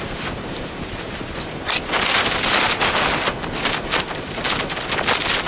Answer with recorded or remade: recorded